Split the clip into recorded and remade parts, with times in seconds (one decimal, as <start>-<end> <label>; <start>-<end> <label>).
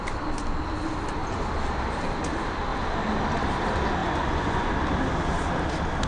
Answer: 0.0-4.0 recorded; 4.0-4.7 remade; 4.7-6.1 recorded